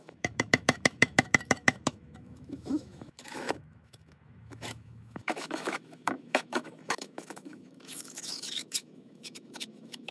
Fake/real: fake